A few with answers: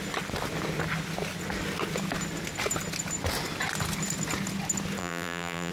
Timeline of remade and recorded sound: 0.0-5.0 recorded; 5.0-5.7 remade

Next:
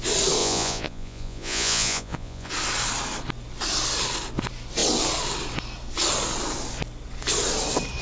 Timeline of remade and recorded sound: 0.0-0.4 recorded; 0.4-2.5 remade; 2.5-8.0 recorded